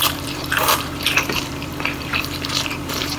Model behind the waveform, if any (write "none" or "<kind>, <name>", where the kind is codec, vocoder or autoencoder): vocoder, BigVGAN v2